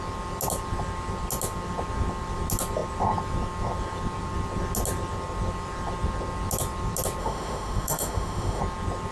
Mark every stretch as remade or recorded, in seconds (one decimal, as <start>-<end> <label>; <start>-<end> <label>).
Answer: 0.0-7.2 recorded; 7.2-8.6 remade; 8.6-9.1 recorded